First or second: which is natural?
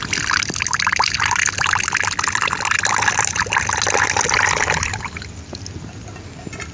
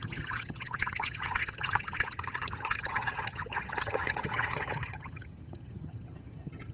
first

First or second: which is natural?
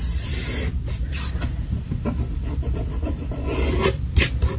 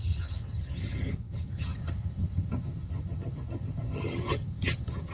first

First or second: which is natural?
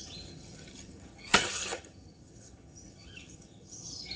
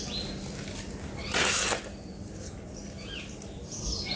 second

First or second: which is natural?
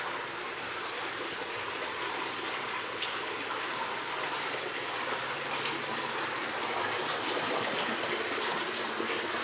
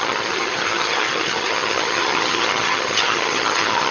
first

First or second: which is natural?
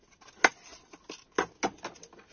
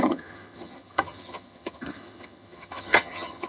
first